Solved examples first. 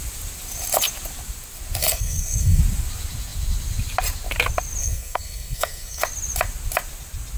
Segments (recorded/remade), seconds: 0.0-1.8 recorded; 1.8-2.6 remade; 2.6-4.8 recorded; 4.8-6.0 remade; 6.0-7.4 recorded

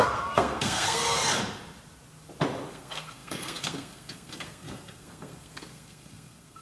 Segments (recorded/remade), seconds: 0.0-1.4 remade; 1.4-2.7 recorded; 2.7-6.6 remade

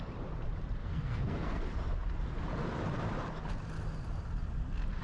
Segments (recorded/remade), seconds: 0.0-0.8 recorded; 0.8-1.6 remade; 1.6-5.0 recorded

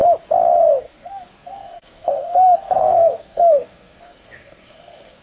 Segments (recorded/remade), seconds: 0.0-0.8 recorded; 0.8-5.2 remade

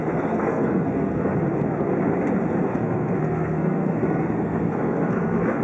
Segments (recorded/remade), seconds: 0.0-1.4 remade; 1.4-2.7 recorded; 2.7-5.6 remade